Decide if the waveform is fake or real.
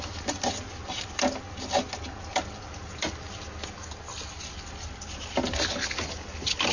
real